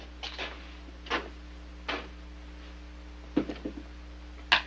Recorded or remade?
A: recorded